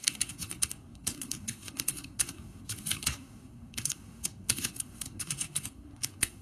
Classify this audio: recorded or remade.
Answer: remade